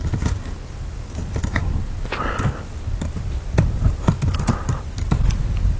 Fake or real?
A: real